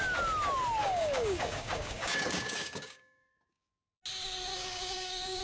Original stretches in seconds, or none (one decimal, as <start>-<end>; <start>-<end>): 0.0-0.8; 4.0-4.5